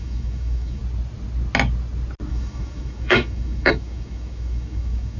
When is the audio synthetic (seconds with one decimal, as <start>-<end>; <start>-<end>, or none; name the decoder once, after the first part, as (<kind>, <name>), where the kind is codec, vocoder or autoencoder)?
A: 0.0-0.8 (autoencoder, DAC-VAE); 2.3-5.2